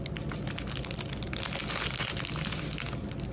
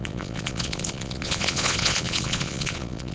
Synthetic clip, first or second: second